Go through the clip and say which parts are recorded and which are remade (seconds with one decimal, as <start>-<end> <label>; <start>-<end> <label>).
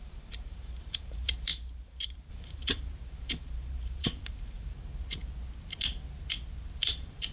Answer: 0.0-5.2 remade; 5.2-6.8 recorded; 6.8-7.3 remade